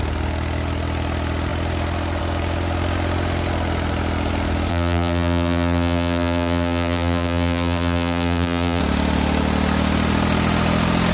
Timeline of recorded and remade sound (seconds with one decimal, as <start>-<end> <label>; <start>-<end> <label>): 0.0-4.7 recorded; 4.7-8.8 remade; 8.8-11.1 recorded

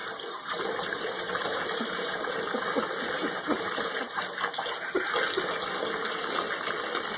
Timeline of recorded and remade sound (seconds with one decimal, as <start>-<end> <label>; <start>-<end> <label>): 0.0-4.2 remade; 4.2-7.2 recorded

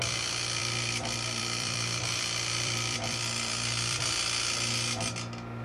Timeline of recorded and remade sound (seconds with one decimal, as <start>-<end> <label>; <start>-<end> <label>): 0.0-0.6 recorded; 0.6-4.0 remade; 4.0-5.6 recorded

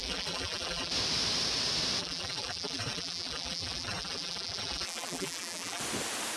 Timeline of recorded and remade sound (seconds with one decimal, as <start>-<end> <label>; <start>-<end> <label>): 0.0-0.9 remade; 0.9-2.0 recorded; 2.0-5.8 remade; 5.8-6.4 recorded

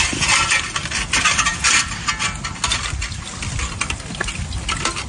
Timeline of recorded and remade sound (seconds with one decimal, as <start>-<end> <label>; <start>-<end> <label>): 0.0-1.5 remade; 1.5-4.6 recorded; 4.6-5.1 remade

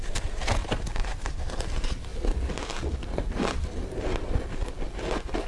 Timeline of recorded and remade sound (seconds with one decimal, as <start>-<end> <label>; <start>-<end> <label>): 0.0-0.6 recorded; 0.6-1.6 remade; 1.6-5.5 recorded

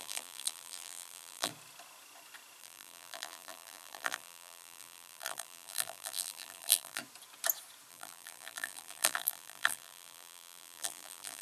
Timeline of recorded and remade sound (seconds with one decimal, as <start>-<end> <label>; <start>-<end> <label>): 0.0-1.5 remade; 1.5-2.6 recorded; 2.6-7.0 remade; 7.0-7.9 recorded; 7.9-11.4 remade